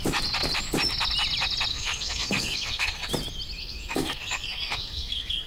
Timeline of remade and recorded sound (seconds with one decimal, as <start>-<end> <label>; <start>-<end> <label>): 0.0-1.7 recorded; 1.7-3.1 remade; 3.1-3.6 recorded; 3.6-5.5 remade